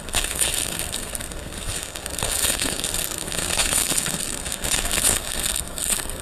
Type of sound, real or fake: fake